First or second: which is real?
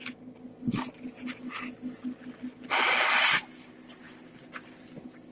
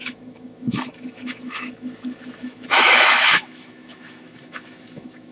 first